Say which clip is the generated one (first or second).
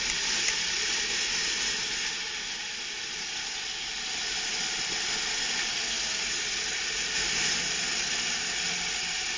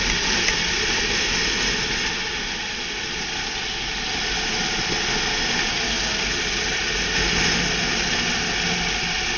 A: first